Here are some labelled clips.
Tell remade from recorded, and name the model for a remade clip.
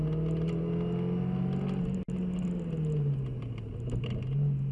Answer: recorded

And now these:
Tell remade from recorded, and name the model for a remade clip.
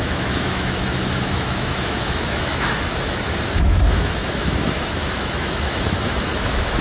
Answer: remade, autoencoder, DAC-VAE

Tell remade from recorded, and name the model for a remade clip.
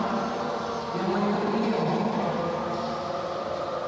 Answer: recorded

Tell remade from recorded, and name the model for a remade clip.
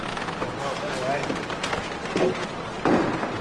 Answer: recorded